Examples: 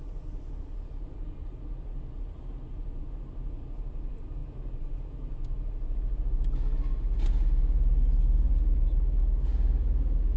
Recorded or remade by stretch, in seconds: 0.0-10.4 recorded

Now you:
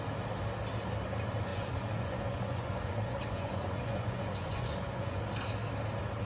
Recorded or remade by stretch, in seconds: 0.0-1.5 recorded; 1.5-5.2 remade; 5.2-6.2 recorded